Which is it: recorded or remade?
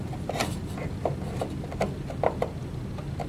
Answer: recorded